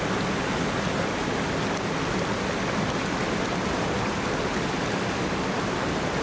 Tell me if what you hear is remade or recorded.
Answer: recorded